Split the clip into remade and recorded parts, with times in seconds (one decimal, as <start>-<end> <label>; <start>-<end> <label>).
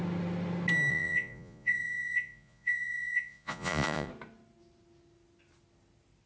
0.0-0.9 recorded; 0.9-4.1 remade; 4.1-6.3 recorded